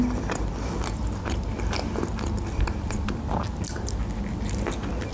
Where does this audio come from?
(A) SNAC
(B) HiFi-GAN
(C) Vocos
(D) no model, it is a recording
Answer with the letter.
D